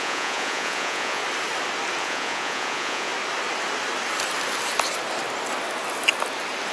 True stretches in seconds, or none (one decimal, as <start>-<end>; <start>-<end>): 1.2-2.0; 3.1-6.7